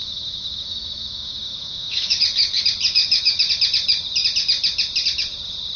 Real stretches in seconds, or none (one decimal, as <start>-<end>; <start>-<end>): 2.2-3.0; 3.5-5.8